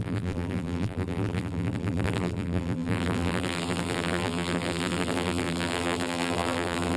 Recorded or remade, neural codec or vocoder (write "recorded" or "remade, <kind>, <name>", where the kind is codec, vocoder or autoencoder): remade, vocoder, BigVGAN v2